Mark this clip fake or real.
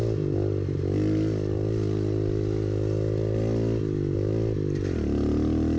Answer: real